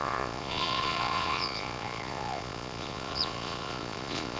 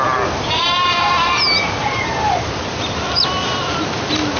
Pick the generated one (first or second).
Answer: first